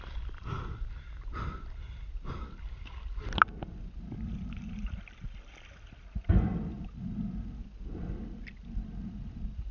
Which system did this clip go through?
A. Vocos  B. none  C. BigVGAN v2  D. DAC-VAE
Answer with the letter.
B